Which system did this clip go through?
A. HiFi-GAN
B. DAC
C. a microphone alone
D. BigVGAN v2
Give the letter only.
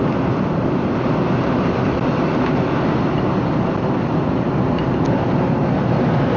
C